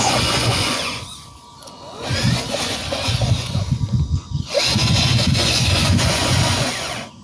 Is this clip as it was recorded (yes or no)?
no